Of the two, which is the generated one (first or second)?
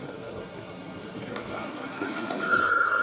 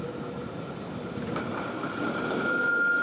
first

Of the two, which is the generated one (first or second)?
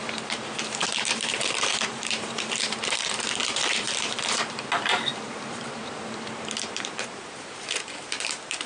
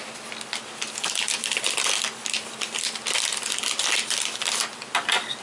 first